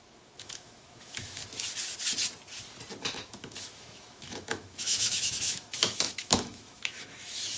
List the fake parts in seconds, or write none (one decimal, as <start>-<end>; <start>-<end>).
0.0-1.4; 3.0-7.6